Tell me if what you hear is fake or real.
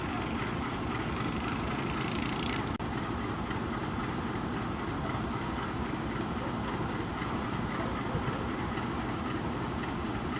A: fake